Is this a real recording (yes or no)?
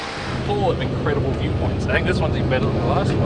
yes